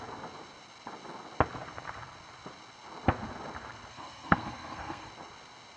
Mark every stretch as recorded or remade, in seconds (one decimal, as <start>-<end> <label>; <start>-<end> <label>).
0.0-3.9 recorded; 3.9-5.1 remade; 5.1-5.8 recorded